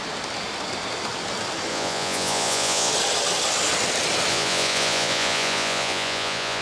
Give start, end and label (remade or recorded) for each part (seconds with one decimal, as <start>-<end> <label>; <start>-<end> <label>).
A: 0.0-1.7 recorded; 1.7-2.9 remade; 2.9-4.3 recorded; 4.3-6.6 remade